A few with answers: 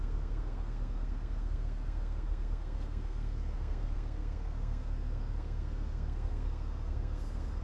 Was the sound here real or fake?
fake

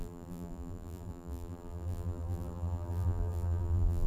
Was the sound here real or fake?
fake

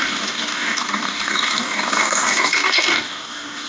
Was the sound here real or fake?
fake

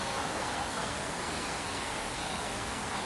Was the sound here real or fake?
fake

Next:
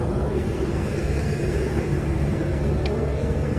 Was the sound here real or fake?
fake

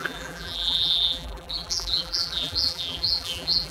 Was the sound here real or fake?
fake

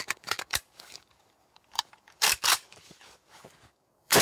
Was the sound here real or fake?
fake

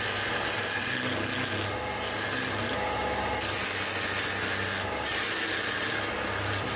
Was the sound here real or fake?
real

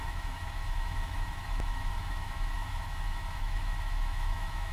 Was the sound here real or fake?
fake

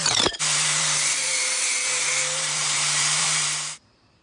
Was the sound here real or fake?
fake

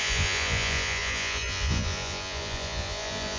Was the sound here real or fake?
fake